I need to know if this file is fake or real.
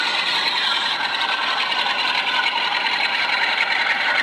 fake